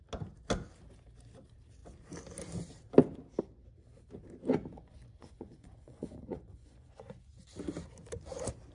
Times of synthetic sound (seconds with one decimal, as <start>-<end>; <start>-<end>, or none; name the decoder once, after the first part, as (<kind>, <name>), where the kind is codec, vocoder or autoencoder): 4.7-7.5 (vocoder, Vocos)